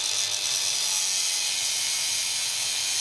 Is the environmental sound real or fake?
real